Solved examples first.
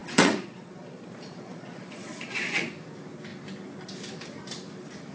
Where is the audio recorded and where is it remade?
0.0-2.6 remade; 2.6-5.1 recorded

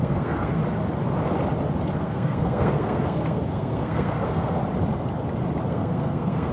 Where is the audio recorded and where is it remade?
0.0-0.6 remade; 0.6-2.0 recorded; 2.0-4.6 remade; 4.6-5.7 recorded; 5.7-6.5 remade

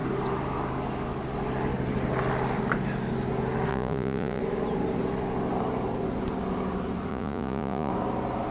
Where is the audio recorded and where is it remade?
0.0-3.7 recorded; 3.7-4.4 remade; 4.4-7.1 recorded; 7.1-7.9 remade; 7.9-8.5 recorded

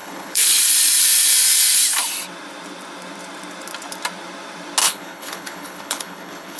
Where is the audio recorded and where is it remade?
0.0-0.6 remade; 0.6-4.8 recorded; 4.8-6.6 remade

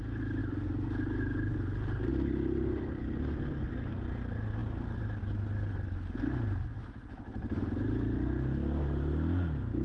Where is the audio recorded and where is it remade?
0.0-9.8 recorded

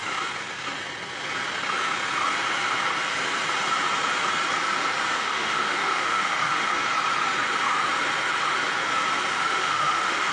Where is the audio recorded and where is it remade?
0.0-5.1 recorded; 5.1-6.5 remade; 6.5-9.3 recorded; 9.3-10.3 remade